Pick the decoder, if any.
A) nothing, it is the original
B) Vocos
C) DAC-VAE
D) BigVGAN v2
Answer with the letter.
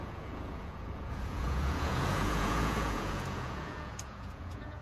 B